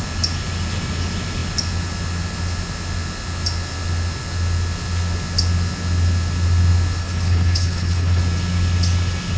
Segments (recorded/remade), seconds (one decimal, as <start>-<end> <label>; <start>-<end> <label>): 0.0-7.0 recorded; 7.0-8.2 remade; 8.2-9.4 recorded